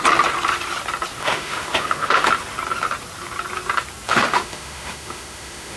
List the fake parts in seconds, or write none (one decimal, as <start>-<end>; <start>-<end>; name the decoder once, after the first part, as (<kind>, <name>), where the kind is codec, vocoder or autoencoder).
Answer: 1.2-2.3 (autoencoder, DAC-VAE); 4.1-5.8